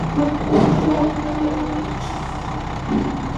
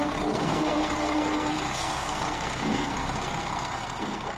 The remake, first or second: second